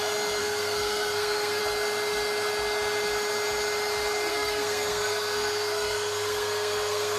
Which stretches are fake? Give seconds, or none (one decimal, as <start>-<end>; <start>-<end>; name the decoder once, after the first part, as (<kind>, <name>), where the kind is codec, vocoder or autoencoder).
0.4-1.6 (codec, SNAC); 4.3-7.2